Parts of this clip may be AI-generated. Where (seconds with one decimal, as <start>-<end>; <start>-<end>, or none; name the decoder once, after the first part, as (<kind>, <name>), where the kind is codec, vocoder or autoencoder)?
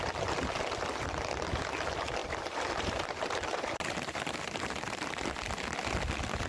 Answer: 2.2-5.1 (vocoder, BigVGAN v2)